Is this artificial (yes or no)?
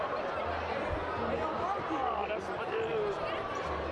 no